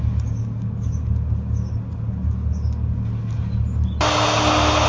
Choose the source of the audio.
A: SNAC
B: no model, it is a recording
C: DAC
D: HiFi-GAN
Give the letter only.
B